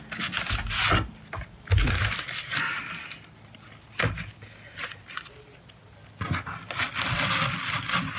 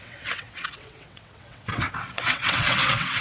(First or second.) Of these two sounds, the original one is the first